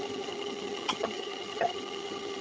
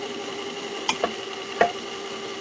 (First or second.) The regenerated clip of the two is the first